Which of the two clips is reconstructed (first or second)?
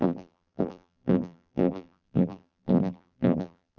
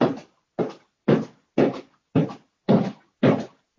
first